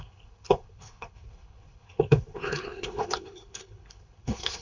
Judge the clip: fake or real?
fake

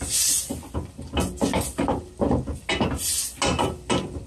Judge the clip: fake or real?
real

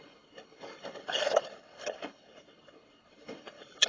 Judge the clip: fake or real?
fake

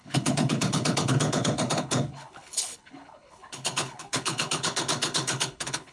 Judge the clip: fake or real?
fake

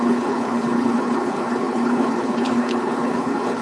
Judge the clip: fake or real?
fake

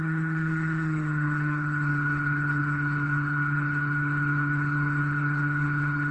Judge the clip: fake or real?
fake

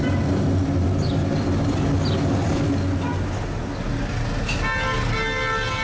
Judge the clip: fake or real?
real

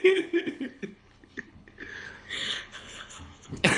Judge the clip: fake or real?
fake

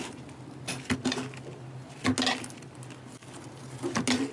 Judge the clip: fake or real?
real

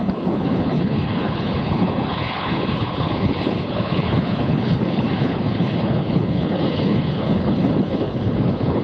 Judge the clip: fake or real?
fake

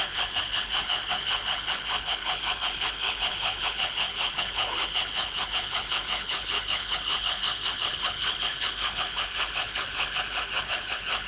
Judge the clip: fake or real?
fake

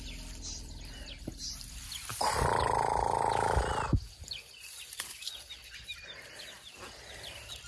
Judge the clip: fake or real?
real